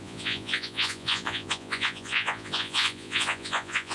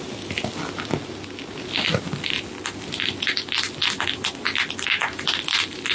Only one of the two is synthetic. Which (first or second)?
first